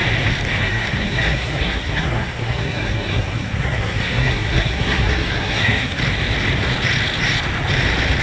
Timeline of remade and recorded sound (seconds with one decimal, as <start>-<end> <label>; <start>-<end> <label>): 0.0-0.6 recorded; 0.6-6.0 remade; 6.0-8.2 recorded